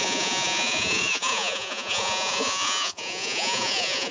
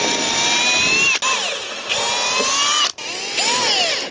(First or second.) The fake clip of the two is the first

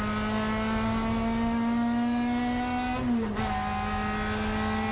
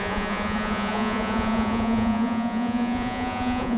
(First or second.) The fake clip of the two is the second